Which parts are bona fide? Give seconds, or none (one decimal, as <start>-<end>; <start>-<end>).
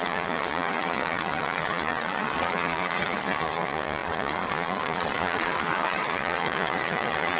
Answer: none